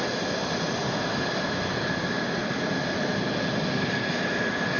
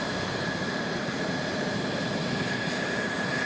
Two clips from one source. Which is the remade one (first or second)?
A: second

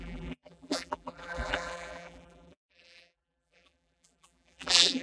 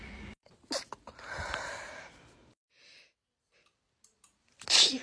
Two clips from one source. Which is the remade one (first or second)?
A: first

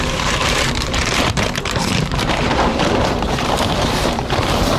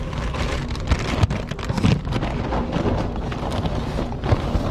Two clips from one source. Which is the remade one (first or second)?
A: first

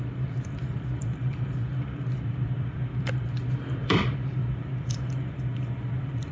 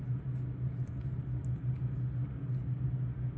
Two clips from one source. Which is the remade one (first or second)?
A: first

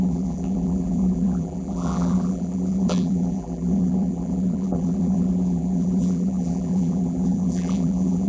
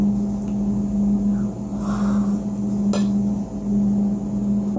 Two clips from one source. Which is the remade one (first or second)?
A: first